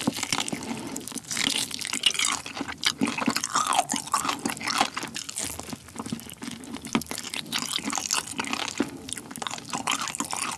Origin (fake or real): real